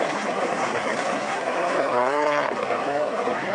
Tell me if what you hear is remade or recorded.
remade